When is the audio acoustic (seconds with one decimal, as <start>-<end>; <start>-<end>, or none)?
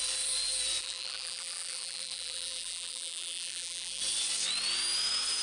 0.0-0.8; 4.0-5.4